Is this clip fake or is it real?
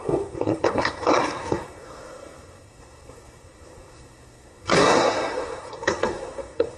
fake